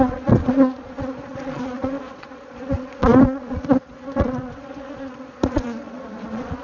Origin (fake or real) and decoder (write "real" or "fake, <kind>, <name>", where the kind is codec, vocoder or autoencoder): fake, vocoder, Vocos